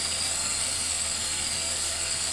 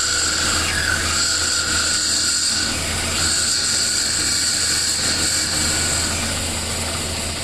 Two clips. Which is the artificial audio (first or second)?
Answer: first